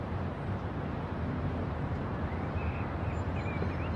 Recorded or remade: remade